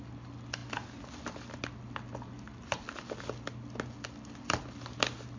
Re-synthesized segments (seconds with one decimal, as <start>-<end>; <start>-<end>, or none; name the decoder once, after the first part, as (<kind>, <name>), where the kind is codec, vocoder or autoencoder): none